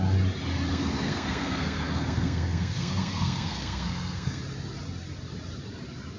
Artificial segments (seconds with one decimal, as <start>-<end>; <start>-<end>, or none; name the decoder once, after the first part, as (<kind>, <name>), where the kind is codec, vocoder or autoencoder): 0.7-4.4 (codec, SNAC)